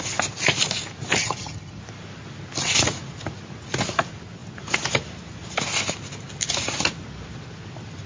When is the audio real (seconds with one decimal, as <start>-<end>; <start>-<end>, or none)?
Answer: 0.0-1.2; 1.8-8.1